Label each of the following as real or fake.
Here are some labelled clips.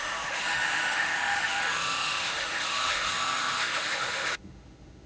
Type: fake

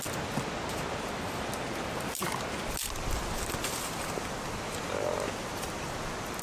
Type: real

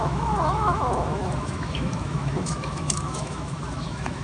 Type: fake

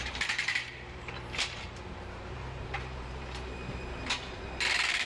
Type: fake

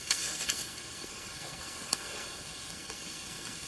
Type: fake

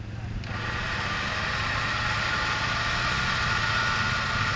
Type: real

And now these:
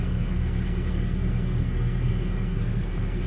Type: fake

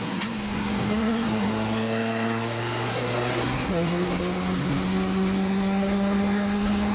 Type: fake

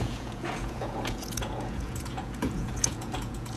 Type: fake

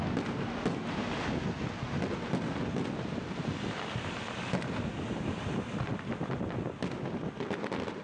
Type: real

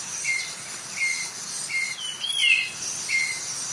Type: real